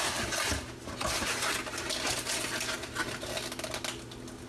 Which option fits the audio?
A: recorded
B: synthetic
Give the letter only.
A